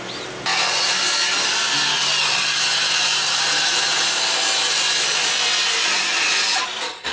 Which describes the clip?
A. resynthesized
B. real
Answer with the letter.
B